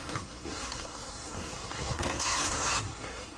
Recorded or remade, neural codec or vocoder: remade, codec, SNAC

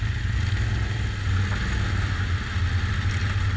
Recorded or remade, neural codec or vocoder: recorded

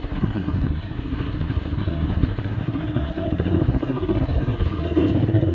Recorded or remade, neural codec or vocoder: remade, codec, SNAC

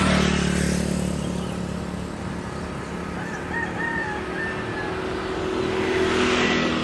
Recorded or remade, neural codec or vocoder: recorded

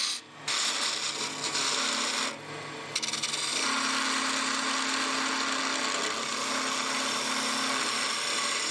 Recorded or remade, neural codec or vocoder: recorded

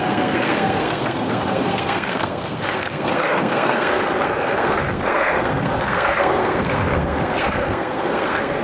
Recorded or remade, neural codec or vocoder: remade, codec, SNAC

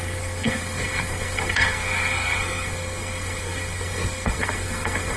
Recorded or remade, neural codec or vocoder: remade, codec, SNAC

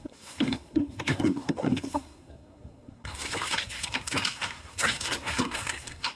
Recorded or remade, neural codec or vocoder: remade, codec, SNAC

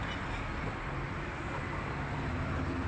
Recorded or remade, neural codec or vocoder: recorded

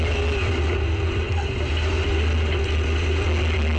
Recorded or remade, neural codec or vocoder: recorded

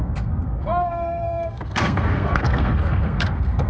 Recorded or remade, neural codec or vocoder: remade, codec, SNAC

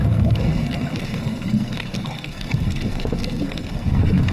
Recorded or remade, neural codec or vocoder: remade, codec, SNAC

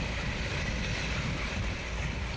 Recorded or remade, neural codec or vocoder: recorded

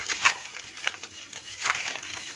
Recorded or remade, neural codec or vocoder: remade, codec, SNAC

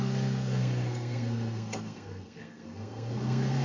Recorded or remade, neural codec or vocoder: remade, codec, SNAC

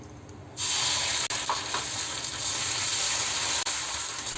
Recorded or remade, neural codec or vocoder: recorded